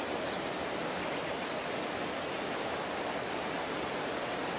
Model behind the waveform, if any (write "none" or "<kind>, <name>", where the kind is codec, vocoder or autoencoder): none